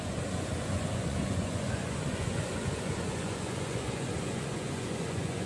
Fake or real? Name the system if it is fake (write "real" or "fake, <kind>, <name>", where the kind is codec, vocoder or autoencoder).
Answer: fake, vocoder, Vocos